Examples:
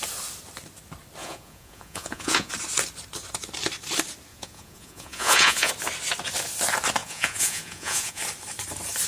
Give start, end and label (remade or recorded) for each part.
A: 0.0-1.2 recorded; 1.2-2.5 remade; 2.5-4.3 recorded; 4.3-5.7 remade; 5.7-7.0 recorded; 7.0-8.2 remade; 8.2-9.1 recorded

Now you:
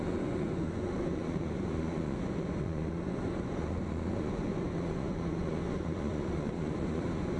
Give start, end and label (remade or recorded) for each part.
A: 0.0-7.4 remade

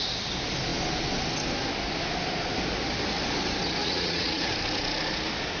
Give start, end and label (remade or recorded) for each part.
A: 0.0-3.8 recorded; 3.8-4.5 remade; 4.5-5.6 recorded

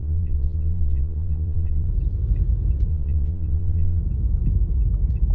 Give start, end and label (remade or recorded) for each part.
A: 0.0-1.9 remade; 1.9-2.9 recorded; 2.9-4.0 remade; 4.0-5.3 recorded

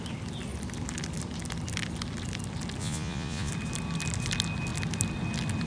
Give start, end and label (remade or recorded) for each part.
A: 0.0-2.8 recorded; 2.8-3.5 remade; 3.5-5.7 recorded

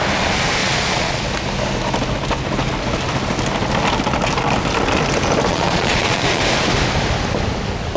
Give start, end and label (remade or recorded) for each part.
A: 0.0-0.6 recorded; 0.6-1.2 remade; 1.2-5.5 recorded; 5.5-6.4 remade; 6.4-8.0 recorded

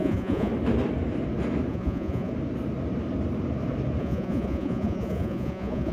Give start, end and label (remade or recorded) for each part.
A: 0.0-0.5 remade; 0.5-1.7 recorded; 1.7-2.3 remade; 2.3-4.0 recorded; 4.0-5.9 remade